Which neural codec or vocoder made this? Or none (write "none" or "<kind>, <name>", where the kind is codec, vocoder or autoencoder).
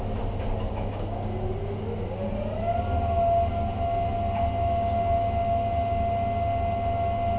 none